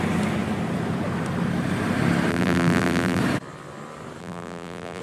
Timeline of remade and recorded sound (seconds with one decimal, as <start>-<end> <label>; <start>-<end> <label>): 0.0-2.3 recorded; 2.3-3.2 remade; 3.2-4.2 recorded; 4.2-5.0 remade